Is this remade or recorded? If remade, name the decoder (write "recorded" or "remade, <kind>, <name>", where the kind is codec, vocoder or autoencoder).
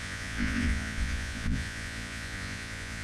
remade, vocoder, Vocos